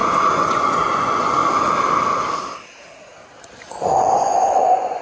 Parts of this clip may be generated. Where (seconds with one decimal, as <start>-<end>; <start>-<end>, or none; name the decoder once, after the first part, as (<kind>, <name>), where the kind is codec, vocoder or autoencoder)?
0.0-1.4 (vocoder, Vocos); 3.7-5.0